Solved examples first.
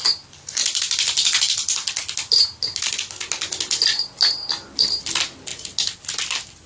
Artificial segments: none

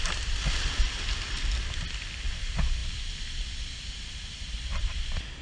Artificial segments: none

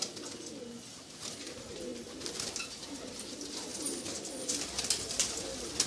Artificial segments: none

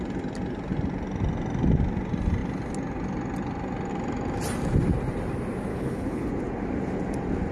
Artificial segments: 5.7-6.3 (codec, HILCodec)